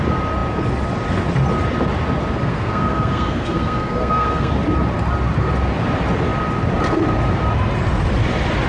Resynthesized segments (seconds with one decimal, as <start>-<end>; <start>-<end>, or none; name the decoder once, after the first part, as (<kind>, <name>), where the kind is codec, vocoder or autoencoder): 2.5-4.5 (codec, SNAC)